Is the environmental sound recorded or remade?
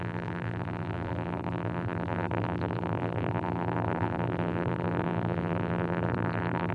remade